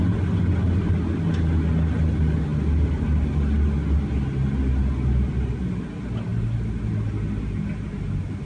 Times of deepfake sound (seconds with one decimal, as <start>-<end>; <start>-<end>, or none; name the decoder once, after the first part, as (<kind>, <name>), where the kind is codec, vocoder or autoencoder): none